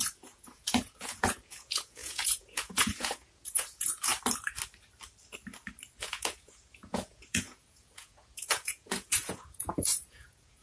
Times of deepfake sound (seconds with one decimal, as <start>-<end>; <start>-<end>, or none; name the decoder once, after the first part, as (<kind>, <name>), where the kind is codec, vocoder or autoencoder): 0.0-4.1 (vocoder, Vocos); 6.0-10.6